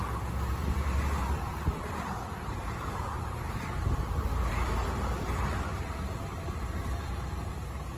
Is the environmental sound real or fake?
fake